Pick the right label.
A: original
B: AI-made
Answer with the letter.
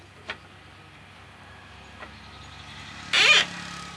A